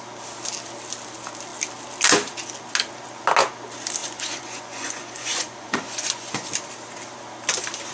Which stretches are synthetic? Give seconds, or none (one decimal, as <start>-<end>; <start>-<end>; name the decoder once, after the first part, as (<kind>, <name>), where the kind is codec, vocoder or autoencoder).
4.0-6.5 (vocoder, Vocos)